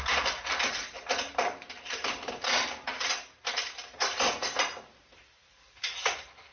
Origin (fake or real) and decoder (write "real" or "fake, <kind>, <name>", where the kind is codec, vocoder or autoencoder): fake, vocoder, BigVGAN v2